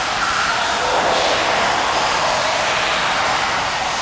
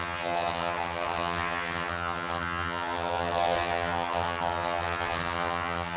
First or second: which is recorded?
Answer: first